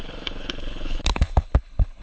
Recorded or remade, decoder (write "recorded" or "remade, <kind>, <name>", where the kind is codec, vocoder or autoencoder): remade, codec, HILCodec